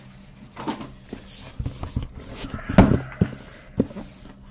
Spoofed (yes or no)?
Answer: no